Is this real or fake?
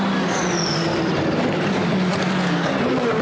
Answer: real